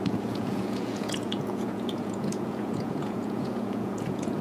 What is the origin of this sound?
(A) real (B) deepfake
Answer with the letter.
B